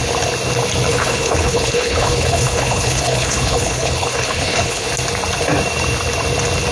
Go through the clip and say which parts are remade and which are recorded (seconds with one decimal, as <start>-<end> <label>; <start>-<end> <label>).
0.0-0.9 recorded; 0.9-4.9 remade; 4.9-6.7 recorded